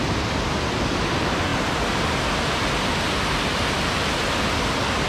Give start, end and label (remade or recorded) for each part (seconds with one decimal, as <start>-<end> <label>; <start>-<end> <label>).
0.0-5.1 recorded

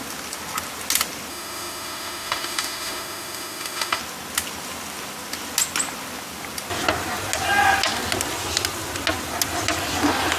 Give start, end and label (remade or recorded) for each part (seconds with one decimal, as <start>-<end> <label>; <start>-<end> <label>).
0.0-1.3 recorded; 1.3-4.0 remade; 4.0-10.4 recorded

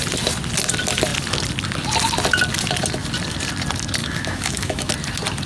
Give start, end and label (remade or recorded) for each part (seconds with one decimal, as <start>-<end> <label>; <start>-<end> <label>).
0.0-4.0 recorded; 4.0-4.9 remade; 4.9-5.5 recorded

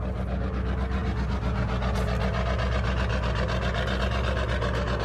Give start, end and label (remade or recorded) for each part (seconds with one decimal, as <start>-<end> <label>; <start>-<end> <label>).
0.0-5.0 recorded

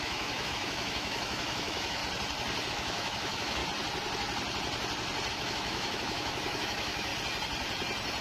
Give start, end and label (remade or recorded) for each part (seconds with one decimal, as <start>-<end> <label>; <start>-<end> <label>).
0.0-2.0 remade; 2.0-2.7 recorded; 2.7-3.6 remade; 3.6-5.3 recorded; 5.3-7.1 remade; 7.1-8.2 recorded

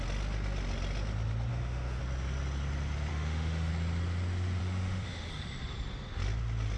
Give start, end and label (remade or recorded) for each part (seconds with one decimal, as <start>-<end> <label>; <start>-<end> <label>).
0.0-1.5 recorded; 1.5-2.0 remade; 2.0-3.1 recorded; 3.1-3.7 remade; 3.7-4.6 recorded; 4.6-5.3 remade; 5.3-6.8 recorded